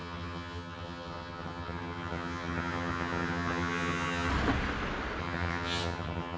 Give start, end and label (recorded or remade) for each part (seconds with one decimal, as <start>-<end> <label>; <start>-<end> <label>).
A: 0.0-4.3 remade; 4.3-5.2 recorded; 5.2-6.4 remade